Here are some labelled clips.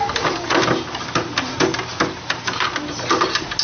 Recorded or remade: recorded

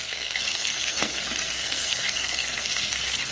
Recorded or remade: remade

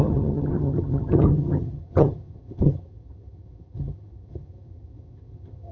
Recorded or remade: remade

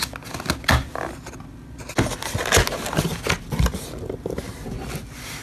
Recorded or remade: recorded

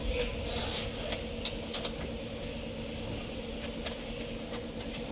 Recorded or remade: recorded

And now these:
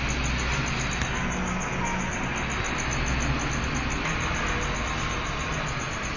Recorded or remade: recorded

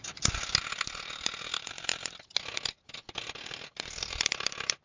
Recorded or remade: recorded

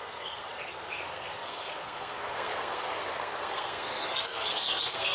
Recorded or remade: remade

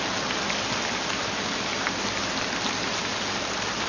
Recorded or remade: recorded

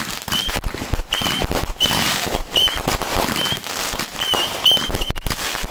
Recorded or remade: recorded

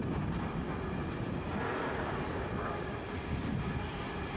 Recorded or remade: recorded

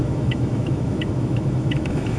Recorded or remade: remade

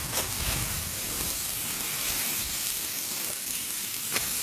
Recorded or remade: remade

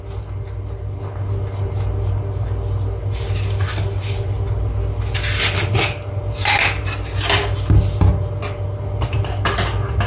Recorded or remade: recorded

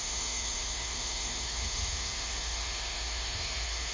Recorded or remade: remade